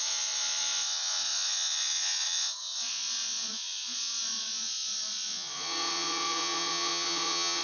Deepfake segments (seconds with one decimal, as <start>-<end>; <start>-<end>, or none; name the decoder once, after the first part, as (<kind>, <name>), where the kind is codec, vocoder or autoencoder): 0.0-7.6 (vocoder, Vocos)